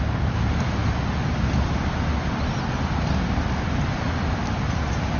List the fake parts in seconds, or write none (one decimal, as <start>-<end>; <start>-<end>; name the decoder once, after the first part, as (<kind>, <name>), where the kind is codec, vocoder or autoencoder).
0.0-0.8 (vocoder, BigVGAN v2); 3.9-5.2